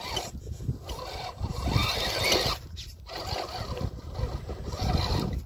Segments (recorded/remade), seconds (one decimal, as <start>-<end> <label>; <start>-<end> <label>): 0.0-5.5 recorded